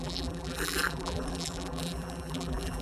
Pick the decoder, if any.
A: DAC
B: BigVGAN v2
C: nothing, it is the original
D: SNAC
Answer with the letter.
B